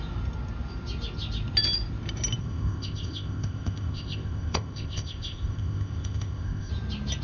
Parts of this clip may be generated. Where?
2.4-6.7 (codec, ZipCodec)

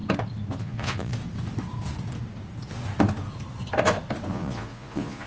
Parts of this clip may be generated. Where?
0.6-1.1 (vocoder, Vocos); 4.3-5.3